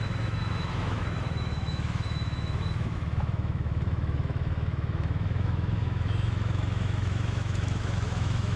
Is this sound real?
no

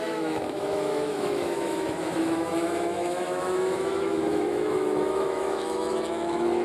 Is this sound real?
no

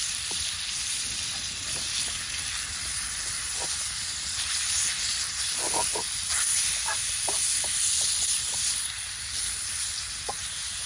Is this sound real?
yes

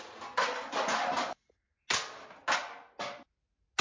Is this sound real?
yes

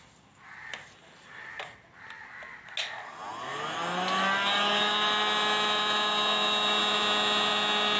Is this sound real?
yes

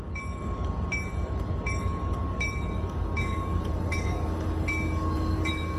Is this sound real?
no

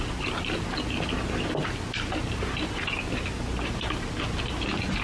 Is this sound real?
yes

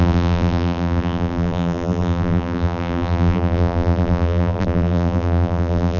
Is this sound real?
no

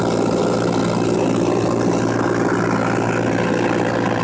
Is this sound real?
yes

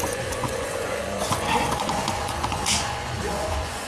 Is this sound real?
no